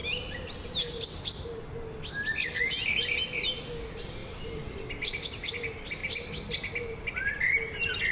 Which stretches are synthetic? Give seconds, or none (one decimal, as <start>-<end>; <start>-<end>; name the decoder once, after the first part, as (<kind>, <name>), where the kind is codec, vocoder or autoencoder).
4.2-5.2 (vocoder, BigVGAN v2)